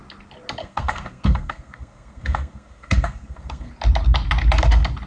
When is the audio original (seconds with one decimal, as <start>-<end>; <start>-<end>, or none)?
0.0-0.6; 3.7-5.1